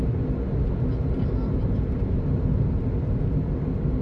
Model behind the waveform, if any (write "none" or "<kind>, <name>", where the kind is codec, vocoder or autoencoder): none